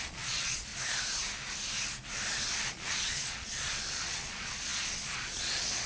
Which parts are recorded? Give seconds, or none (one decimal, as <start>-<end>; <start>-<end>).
0.7-2.7